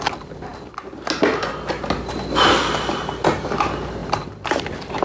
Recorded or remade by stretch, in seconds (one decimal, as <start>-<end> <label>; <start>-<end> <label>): 0.0-5.0 recorded